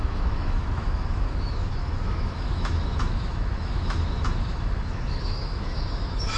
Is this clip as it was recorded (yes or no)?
no